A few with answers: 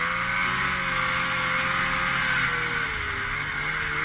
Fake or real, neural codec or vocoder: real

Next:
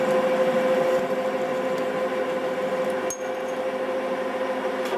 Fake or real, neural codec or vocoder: real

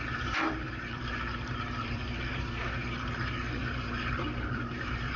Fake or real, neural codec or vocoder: fake, vocoder, BigVGAN v2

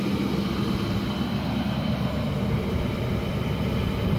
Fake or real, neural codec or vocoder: real